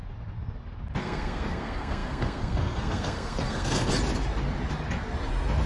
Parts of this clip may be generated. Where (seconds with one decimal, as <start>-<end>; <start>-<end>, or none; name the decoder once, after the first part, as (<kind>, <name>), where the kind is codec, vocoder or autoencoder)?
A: 1.0-3.9 (codec, SNAC)